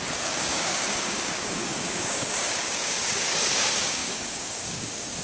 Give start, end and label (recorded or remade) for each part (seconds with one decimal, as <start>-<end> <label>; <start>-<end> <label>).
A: 0.0-5.2 remade